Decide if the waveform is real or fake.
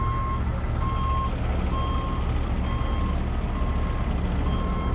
real